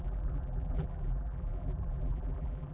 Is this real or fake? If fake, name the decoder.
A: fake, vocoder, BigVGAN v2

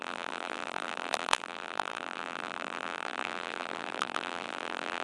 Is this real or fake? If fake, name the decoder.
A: fake, vocoder, BigVGAN v2